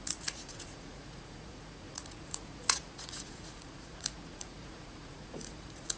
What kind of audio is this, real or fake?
fake